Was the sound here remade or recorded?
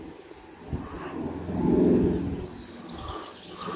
recorded